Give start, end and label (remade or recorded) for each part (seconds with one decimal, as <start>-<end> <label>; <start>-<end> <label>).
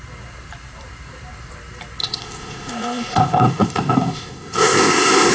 0.0-2.0 recorded; 2.0-5.3 remade